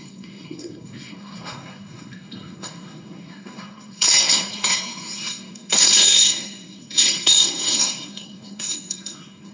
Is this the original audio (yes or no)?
no